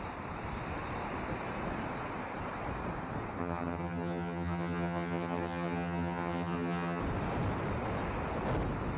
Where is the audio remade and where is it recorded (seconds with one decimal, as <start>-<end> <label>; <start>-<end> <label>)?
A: 0.0-3.4 recorded; 3.4-7.0 remade; 7.0-9.0 recorded